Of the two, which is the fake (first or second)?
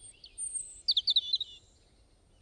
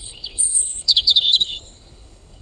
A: second